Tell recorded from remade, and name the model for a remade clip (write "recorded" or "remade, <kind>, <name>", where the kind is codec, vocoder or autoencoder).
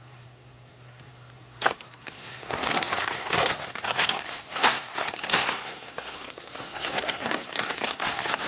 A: remade, codec, SNAC